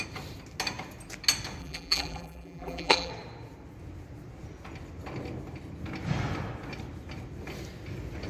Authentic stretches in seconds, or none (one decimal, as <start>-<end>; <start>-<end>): 0.0-1.6; 3.1-8.3